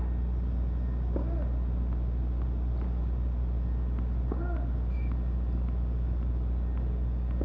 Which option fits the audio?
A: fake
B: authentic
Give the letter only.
B